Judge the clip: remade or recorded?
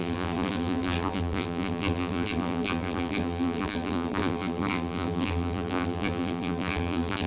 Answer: remade